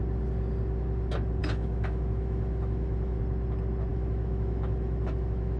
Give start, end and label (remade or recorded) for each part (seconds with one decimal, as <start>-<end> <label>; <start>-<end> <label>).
0.0-1.4 recorded; 1.4-3.2 remade; 3.2-3.9 recorded; 3.9-5.6 remade

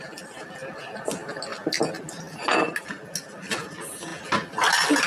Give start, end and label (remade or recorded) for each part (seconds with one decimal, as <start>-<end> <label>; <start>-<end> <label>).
0.0-5.1 recorded

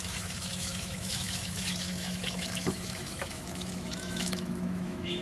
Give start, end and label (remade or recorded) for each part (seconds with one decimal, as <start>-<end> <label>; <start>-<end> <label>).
0.0-5.2 remade

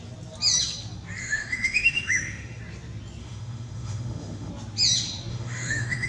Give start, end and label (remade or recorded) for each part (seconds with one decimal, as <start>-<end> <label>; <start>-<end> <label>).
0.0-1.2 recorded; 1.2-2.6 remade; 2.6-3.2 recorded; 3.2-4.5 remade; 4.5-5.3 recorded; 5.3-6.1 remade